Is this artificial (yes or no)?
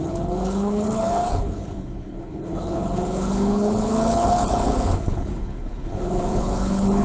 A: yes